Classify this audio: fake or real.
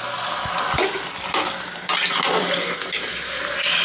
real